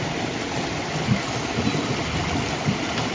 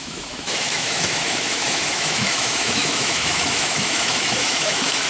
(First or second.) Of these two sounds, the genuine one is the first